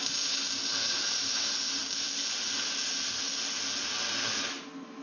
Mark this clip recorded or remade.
recorded